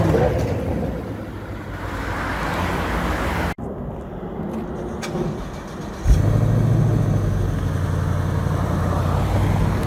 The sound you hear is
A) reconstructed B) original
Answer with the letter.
B